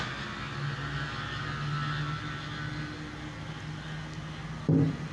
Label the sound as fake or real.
real